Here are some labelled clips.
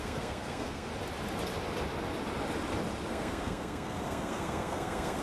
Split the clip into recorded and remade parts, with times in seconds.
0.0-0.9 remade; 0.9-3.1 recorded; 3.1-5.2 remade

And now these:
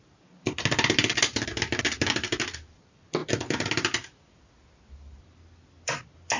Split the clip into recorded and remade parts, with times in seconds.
0.0-6.4 recorded

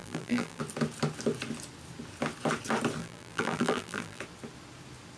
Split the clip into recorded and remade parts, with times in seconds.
0.0-0.6 remade; 0.6-3.0 recorded; 3.0-4.2 remade; 4.2-5.2 recorded

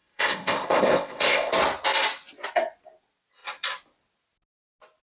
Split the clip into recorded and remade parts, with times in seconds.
0.0-1.5 remade; 1.5-5.0 recorded

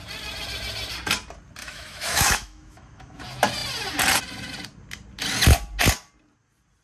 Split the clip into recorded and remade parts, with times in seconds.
0.0-1.6 recorded; 1.6-3.2 remade; 3.2-6.8 recorded

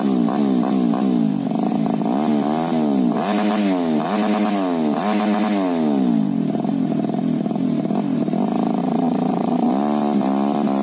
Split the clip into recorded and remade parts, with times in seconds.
0.0-8.8 recorded; 8.8-9.7 remade; 9.7-10.8 recorded

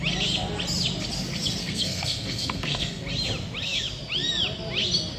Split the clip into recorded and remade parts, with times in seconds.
0.0-1.6 recorded; 1.6-3.0 remade; 3.0-5.2 recorded